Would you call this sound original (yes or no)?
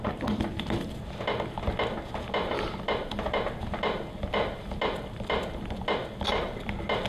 yes